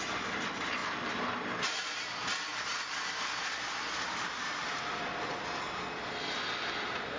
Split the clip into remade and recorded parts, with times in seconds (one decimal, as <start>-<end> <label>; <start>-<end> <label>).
0.0-0.8 recorded; 0.8-5.0 remade; 5.0-7.2 recorded